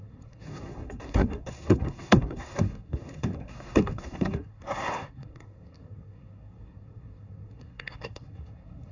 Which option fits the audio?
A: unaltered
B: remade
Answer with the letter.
B